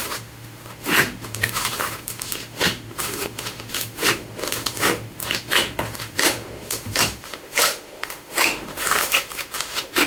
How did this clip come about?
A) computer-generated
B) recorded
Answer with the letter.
A